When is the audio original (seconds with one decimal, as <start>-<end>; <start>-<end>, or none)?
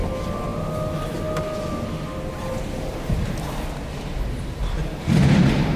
0.0-5.8